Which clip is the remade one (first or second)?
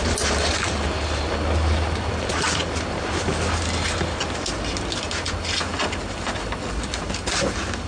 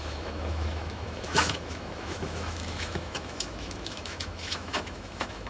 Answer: second